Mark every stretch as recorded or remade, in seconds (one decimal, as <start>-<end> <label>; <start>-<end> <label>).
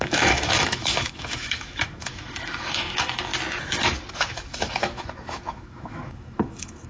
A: 0.0-3.3 remade; 3.3-4.1 recorded; 4.1-6.9 remade